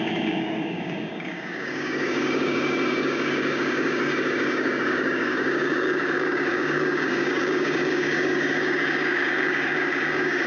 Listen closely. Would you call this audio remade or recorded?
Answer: remade